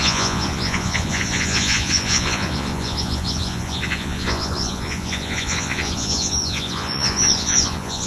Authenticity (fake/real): fake